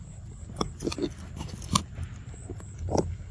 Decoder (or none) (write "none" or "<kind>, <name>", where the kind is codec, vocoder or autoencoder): none